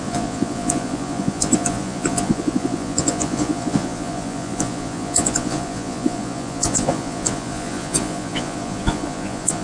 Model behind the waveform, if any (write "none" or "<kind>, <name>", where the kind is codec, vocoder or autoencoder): vocoder, Vocos